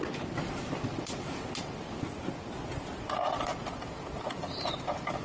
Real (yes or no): yes